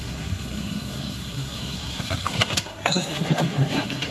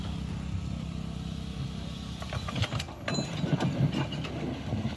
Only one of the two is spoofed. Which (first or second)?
first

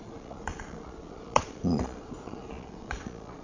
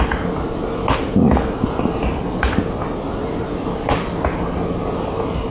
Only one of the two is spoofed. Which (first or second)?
first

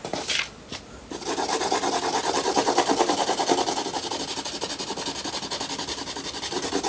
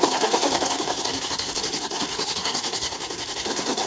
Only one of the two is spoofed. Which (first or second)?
second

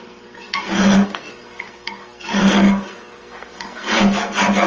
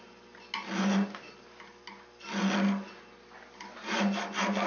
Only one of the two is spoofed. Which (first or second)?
first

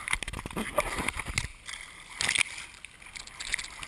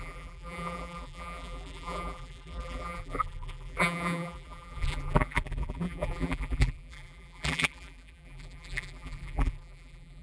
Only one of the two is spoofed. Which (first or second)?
second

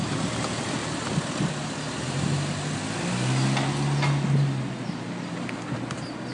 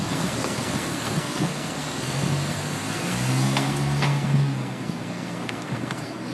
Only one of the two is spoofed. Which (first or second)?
second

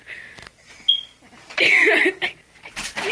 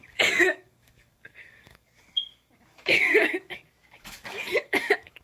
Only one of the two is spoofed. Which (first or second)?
second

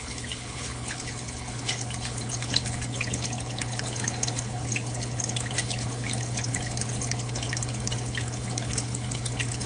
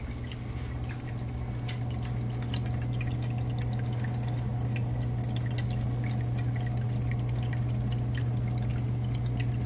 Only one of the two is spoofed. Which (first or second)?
first